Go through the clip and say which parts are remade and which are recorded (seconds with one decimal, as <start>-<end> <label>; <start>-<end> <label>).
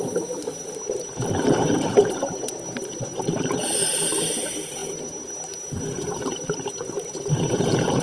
0.0-8.0 remade